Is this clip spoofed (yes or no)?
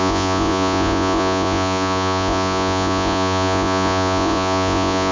yes